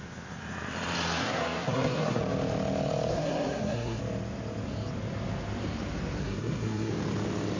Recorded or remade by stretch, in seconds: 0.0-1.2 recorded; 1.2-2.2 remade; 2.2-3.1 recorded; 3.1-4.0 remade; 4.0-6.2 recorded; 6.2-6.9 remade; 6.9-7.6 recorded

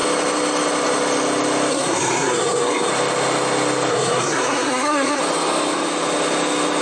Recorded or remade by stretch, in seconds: 0.0-1.7 recorded; 1.7-2.9 remade; 2.9-3.9 recorded; 3.9-5.2 remade; 5.2-6.8 recorded